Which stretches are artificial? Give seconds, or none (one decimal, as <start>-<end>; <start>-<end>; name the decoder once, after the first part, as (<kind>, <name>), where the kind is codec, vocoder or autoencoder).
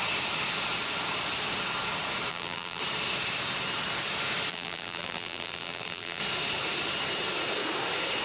2.3-2.8 (vocoder, BigVGAN v2); 4.5-6.2